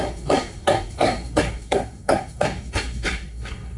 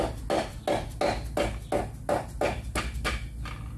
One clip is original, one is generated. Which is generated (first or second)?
first